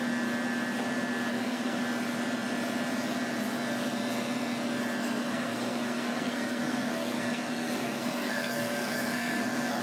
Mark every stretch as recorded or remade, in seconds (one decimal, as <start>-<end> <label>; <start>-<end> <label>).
0.0-1.3 recorded; 1.3-1.8 remade; 1.8-5.0 recorded; 5.0-9.8 remade